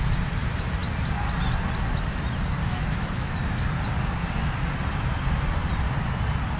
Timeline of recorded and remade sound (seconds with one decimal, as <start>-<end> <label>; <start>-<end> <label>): 0.0-2.6 recorded; 2.6-3.3 remade; 3.3-6.6 recorded